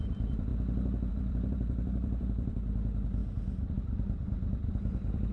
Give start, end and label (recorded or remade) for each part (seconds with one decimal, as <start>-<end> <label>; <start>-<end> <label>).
0.0-0.5 remade; 0.5-1.1 recorded; 1.1-3.2 remade; 3.2-3.7 recorded; 3.7-5.3 remade